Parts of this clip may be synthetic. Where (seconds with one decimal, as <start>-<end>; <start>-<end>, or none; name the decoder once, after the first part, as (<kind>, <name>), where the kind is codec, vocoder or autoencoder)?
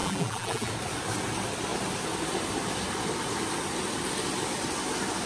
0.0-0.7 (vocoder, BigVGAN v2)